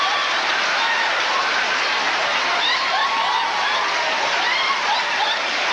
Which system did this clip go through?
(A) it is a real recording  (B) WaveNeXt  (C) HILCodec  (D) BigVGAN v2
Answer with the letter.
A